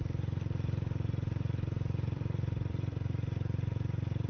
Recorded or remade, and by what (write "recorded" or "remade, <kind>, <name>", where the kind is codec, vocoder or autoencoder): remade, vocoder, BigVGAN v2